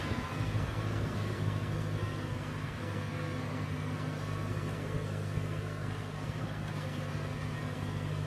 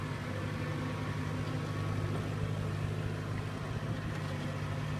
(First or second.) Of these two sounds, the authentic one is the second